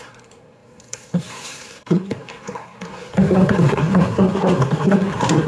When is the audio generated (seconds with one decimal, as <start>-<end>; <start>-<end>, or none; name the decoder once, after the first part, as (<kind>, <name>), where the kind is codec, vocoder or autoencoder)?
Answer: 0.0-5.5 (codec, SNAC)